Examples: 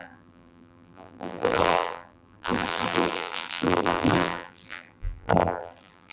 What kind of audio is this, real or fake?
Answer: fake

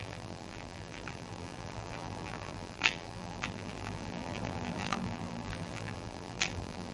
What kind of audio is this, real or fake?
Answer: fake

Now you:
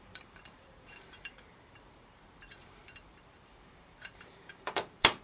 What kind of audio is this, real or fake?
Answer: fake